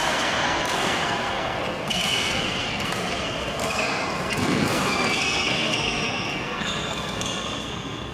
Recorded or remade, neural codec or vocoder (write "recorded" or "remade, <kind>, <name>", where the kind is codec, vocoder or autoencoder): remade, codec, SNAC